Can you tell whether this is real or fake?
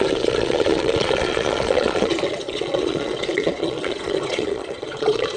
fake